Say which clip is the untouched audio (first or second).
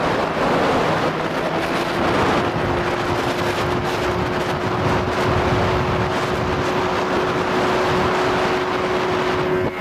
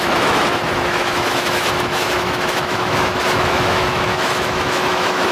first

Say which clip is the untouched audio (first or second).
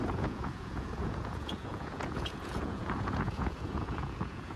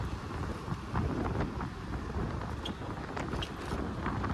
second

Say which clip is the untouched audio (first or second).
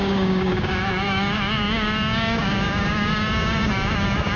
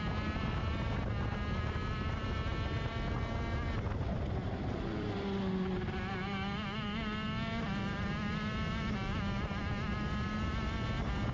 second